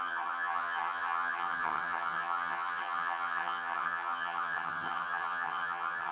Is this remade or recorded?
remade